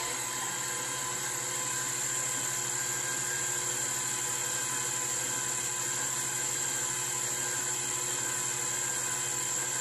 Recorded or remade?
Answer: recorded